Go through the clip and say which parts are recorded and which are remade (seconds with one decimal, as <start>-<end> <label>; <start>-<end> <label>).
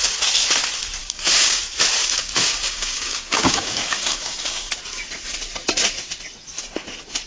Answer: 0.0-1.0 recorded; 1.0-1.6 remade; 1.6-2.0 recorded; 2.0-4.7 remade; 4.7-7.3 recorded